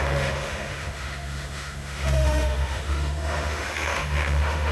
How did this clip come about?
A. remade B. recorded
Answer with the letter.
A